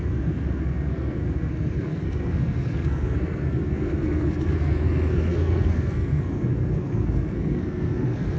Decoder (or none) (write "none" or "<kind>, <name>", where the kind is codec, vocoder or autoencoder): codec, SNAC